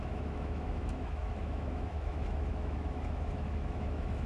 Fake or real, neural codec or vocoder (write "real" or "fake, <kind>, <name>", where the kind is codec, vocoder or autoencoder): fake, autoencoder, DAC-VAE